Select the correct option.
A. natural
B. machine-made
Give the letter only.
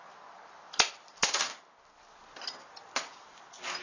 A